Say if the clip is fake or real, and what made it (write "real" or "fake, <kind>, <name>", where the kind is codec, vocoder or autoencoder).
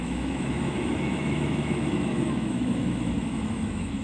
fake, autoencoder, DAC-VAE